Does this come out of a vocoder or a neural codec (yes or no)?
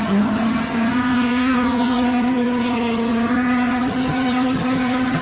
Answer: yes